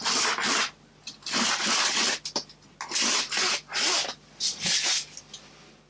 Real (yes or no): yes